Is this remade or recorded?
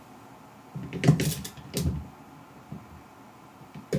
recorded